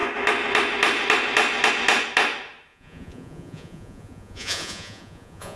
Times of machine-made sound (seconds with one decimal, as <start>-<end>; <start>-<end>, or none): 2.7-5.6